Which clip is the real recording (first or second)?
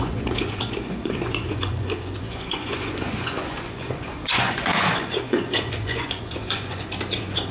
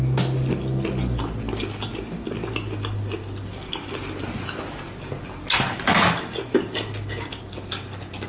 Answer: second